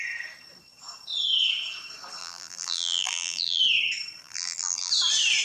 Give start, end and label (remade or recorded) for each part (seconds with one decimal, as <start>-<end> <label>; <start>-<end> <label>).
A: 0.0-2.2 recorded; 2.2-3.6 remade; 3.6-4.2 recorded; 4.2-4.9 remade; 4.9-5.4 recorded